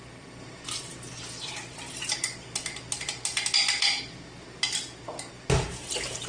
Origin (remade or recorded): recorded